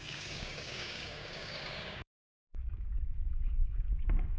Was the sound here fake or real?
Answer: fake